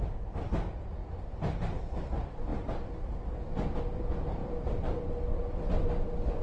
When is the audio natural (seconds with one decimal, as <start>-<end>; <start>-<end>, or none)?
0.0-4.4; 5.0-6.4